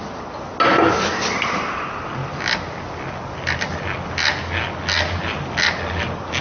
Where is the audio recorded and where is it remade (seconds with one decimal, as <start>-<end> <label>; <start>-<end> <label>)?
0.0-6.4 recorded